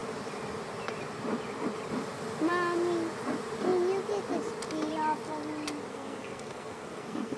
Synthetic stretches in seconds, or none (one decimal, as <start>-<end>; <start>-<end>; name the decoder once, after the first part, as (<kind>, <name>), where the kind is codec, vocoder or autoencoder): 5.9-7.4 (codec, SNAC)